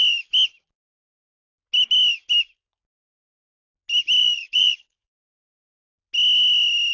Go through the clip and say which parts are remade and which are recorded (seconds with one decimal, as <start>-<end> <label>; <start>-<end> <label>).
0.0-4.2 recorded; 4.2-5.2 remade; 5.2-6.9 recorded